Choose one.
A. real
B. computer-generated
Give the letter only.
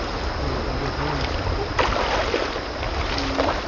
A